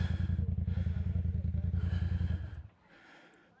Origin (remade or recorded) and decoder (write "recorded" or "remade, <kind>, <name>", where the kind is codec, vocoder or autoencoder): recorded